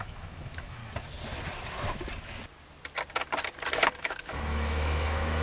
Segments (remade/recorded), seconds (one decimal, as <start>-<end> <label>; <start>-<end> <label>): 0.0-0.8 remade; 0.8-4.0 recorded; 4.0-5.4 remade